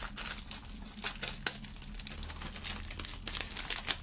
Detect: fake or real real